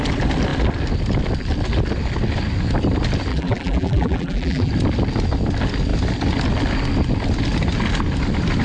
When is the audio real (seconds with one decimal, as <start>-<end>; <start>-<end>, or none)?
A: 0.0-3.3; 4.7-8.6